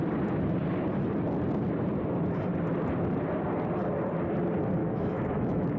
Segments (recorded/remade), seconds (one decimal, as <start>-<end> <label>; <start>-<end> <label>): 0.0-4.8 recorded; 4.8-5.8 remade